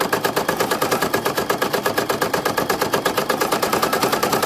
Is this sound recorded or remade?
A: remade